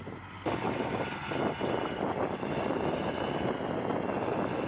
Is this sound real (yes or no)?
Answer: yes